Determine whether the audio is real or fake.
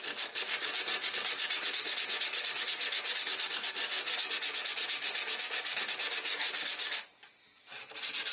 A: real